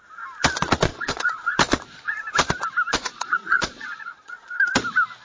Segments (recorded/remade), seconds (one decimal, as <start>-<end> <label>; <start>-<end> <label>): 0.0-0.9 recorded; 0.9-1.5 remade; 1.5-2.9 recorded; 2.9-4.6 remade; 4.6-5.2 recorded